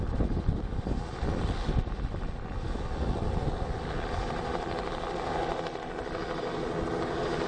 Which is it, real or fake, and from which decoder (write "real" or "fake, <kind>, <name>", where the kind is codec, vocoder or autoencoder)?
real